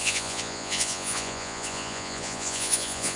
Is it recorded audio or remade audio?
remade